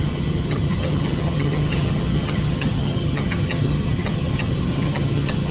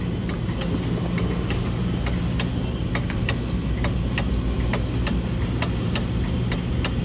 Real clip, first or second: second